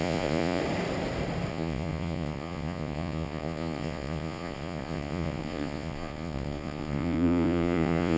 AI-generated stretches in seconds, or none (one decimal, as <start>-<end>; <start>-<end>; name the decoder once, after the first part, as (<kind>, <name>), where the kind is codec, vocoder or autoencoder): 0.0-0.6 (vocoder, Vocos); 1.5-8.2